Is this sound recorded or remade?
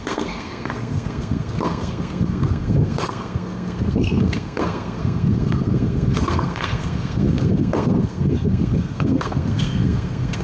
remade